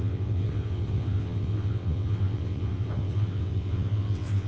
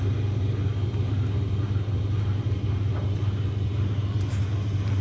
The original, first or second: second